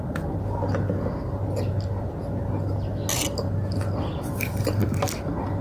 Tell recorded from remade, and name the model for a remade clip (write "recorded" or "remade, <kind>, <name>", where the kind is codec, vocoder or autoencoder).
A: recorded